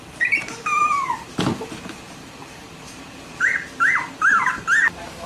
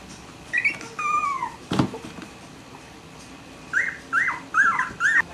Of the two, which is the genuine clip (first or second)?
second